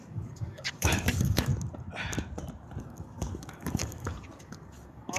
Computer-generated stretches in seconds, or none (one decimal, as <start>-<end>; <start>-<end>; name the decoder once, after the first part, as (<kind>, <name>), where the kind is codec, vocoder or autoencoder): 0.0-1.5 (codec, DAC); 2.8-5.2